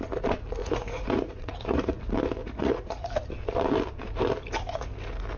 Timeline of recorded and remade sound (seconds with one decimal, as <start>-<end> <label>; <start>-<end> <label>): 0.0-0.6 recorded; 0.6-2.0 remade; 2.0-2.4 recorded; 2.4-3.1 remade; 3.1-5.4 recorded